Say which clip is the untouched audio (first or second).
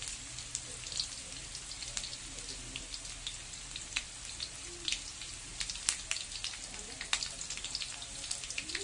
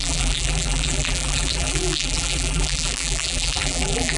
first